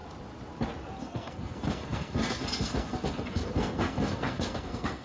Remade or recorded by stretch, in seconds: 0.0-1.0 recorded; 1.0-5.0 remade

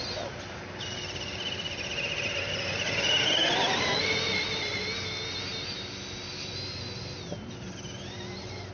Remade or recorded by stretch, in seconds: 0.0-8.7 recorded

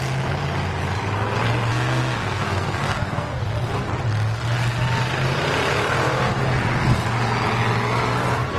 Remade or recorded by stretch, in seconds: 0.0-1.7 recorded; 1.7-3.4 remade; 3.4-8.6 recorded

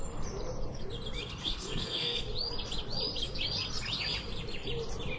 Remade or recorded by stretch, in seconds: 0.0-1.4 recorded; 1.4-2.2 remade; 2.2-5.2 recorded

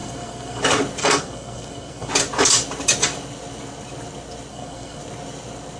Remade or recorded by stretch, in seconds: 0.0-0.6 remade; 0.6-1.0 recorded; 1.0-2.1 remade; 2.1-4.5 recorded; 4.5-5.0 remade; 5.0-5.8 recorded

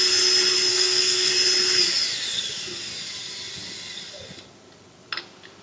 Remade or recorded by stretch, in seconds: 0.0-0.7 recorded; 0.7-1.3 remade; 1.3-5.6 recorded

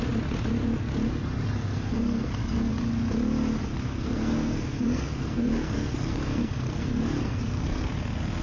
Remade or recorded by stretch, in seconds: 0.0-1.6 recorded; 1.6-2.7 remade; 2.7-3.9 recorded; 3.9-7.9 remade; 7.9-8.4 recorded